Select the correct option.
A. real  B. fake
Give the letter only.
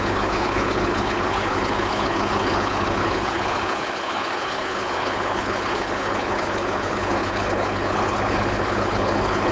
B